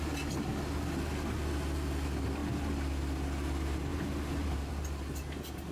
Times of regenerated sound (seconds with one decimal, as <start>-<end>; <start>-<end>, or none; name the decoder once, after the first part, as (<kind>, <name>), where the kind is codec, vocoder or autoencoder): 3.9-4.7 (vocoder, BigVGAN v2)